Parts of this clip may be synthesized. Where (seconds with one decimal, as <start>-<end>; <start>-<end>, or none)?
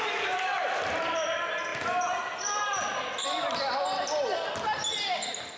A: none